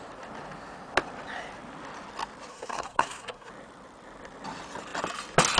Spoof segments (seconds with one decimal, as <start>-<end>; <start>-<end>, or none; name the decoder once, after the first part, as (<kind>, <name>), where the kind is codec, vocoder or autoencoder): 2.5-3.5 (codec, SNAC)